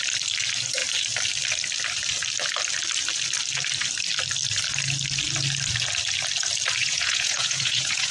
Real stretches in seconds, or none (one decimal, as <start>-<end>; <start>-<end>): 0.0-6.8